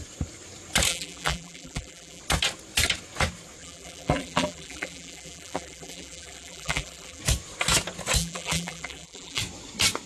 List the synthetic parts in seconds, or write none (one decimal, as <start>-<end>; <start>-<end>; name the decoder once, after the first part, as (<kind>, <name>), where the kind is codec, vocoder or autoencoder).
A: 0.9-2.2 (vocoder, BigVGAN v2); 3.6-7.2; 8.2-9.4